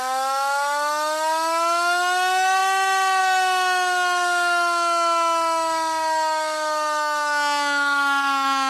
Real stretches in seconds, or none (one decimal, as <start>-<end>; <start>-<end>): none

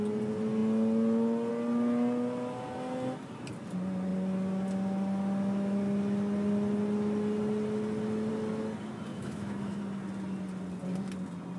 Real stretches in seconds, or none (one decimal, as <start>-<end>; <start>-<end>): 0.0-9.1; 9.8-11.6

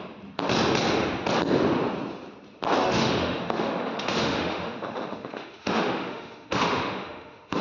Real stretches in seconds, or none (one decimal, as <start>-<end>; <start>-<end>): 0.0-2.8

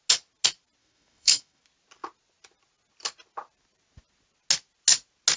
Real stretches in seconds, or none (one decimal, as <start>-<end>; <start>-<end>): 0.0-0.8; 1.6-5.4

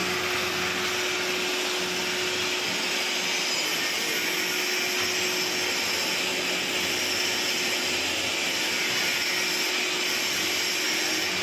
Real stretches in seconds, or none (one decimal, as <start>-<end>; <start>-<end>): 0.0-11.4